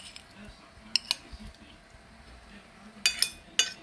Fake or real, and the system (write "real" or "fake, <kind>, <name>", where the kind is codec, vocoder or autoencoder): real